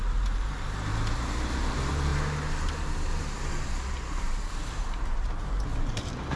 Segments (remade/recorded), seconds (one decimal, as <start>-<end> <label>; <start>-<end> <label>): 0.0-2.1 remade; 2.1-3.1 recorded; 3.1-6.4 remade